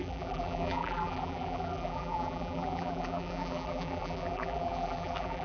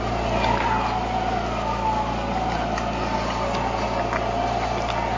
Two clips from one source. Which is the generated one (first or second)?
first